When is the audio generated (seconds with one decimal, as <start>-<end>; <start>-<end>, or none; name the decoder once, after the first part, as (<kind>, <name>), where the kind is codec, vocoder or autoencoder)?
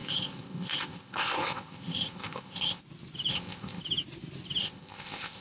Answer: 0.0-2.8 (codec, ZipCodec); 3.3-3.8; 4.6-5.4